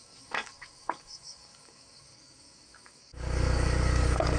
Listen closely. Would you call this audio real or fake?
fake